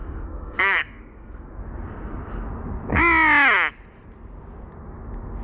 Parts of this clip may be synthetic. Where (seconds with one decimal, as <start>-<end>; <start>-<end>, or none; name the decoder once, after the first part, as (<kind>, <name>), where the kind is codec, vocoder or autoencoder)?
0.0-1.6 (codec, SNAC)